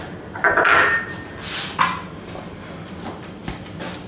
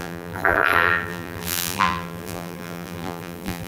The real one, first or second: first